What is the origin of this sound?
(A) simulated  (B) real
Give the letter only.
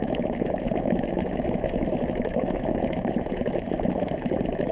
A